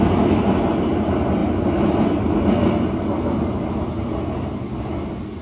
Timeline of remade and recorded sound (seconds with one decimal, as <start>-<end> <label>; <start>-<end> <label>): 0.0-5.4 recorded